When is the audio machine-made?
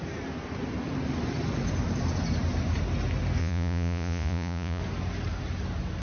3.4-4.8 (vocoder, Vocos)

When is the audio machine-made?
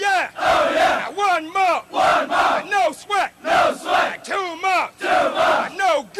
2.1-3.1 (vocoder, BigVGAN v2)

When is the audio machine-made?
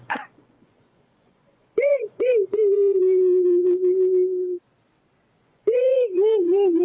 0.0-3.0 (vocoder, Vocos); 5.4-6.8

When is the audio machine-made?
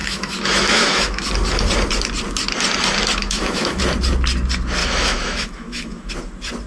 0.0-1.3 (autoencoder, DAC-VAE); 3.2-3.8; 4.8-6.1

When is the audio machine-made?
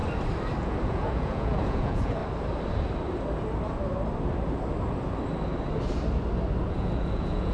0.6-2.2 (vocoder, Vocos); 6.7-7.5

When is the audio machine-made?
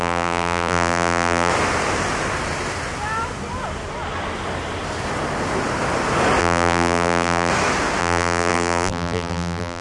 0.0-1.5 (vocoder, BigVGAN v2); 6.4-7.5; 8.0-9.8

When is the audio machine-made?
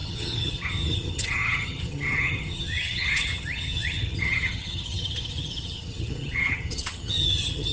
0.0-7.7 (vocoder, HiFi-GAN)